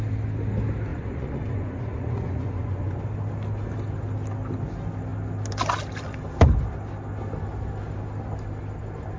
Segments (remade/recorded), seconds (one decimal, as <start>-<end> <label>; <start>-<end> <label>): 0.0-0.9 recorded; 0.9-3.0 remade; 3.0-9.2 recorded